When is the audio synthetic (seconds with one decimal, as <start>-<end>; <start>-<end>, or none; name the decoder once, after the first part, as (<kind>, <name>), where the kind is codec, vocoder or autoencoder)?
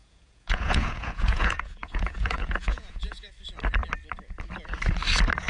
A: 0.0-3.3 (vocoder, Vocos)